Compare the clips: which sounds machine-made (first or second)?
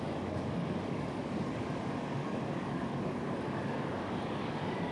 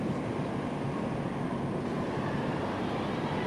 first